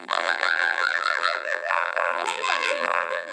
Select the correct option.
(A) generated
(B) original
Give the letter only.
A